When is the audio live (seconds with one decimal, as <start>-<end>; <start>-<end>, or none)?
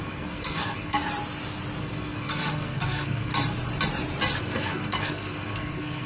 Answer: 1.0-1.8; 3.3-4.4